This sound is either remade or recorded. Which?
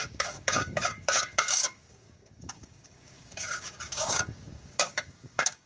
remade